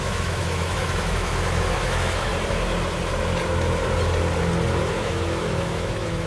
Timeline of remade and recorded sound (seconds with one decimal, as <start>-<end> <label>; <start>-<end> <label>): 0.0-2.3 remade; 2.3-4.8 recorded; 4.8-6.3 remade